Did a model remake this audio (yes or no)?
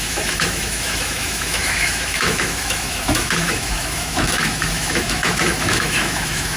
yes